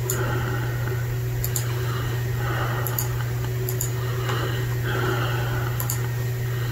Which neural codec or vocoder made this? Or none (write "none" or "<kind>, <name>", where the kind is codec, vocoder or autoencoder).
none